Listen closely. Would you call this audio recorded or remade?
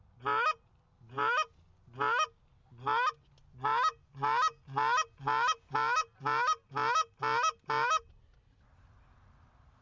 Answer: recorded